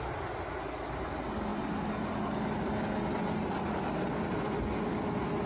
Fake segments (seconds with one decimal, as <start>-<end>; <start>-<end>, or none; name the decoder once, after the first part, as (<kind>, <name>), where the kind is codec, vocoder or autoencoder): none